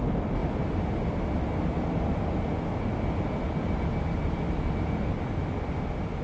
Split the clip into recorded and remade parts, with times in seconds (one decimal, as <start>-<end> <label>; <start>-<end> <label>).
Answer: 0.0-6.2 recorded